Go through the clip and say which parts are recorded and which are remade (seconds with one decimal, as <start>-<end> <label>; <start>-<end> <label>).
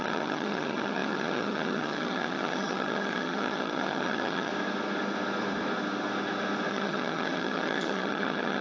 0.0-4.5 remade; 4.5-6.7 recorded; 6.7-8.6 remade